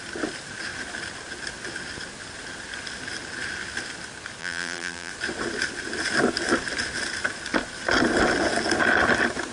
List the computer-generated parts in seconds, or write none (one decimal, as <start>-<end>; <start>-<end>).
4.4-5.1